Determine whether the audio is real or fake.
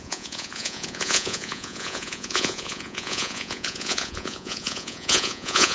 fake